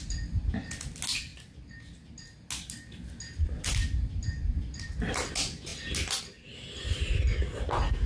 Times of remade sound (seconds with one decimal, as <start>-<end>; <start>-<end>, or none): none